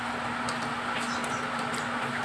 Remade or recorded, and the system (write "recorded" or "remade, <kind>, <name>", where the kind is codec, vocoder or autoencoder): recorded